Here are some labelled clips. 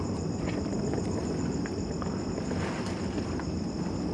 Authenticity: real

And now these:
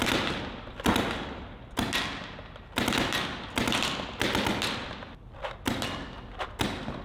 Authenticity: real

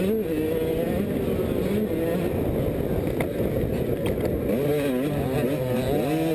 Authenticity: real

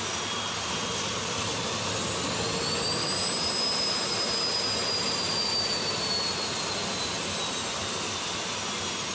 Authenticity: real